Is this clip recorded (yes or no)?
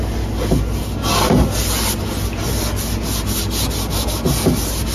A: yes